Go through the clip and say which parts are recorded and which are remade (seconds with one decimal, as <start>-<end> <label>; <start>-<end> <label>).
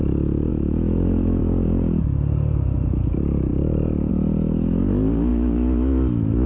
0.0-0.5 recorded; 0.5-1.4 remade; 1.4-5.3 recorded; 5.3-6.5 remade